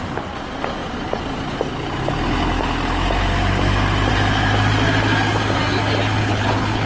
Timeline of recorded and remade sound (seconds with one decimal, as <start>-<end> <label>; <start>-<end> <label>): 0.0-6.2 recorded; 6.2-6.9 remade